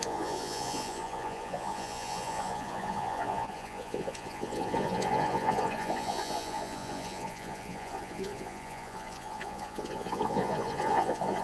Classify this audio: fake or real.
fake